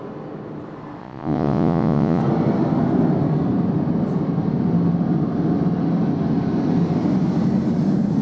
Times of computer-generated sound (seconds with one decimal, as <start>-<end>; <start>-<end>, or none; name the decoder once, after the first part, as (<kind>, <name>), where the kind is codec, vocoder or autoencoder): 1.0-2.2 (vocoder, Vocos)